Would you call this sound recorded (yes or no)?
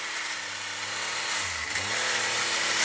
yes